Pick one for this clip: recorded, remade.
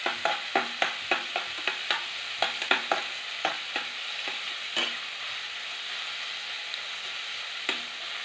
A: recorded